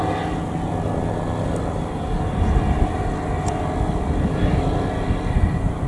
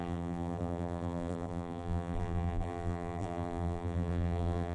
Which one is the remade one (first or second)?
second